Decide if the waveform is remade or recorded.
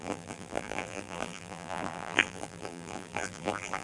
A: remade